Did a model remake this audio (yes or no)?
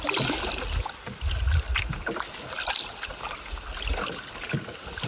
no